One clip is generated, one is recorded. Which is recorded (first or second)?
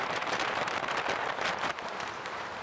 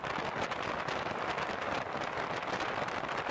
second